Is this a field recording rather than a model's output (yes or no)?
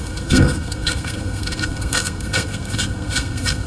no